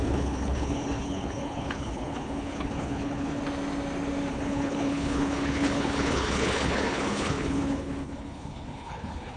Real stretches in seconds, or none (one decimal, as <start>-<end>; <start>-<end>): 3.4-4.3